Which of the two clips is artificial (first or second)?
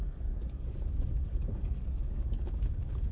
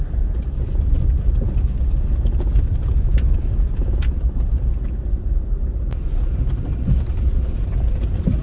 first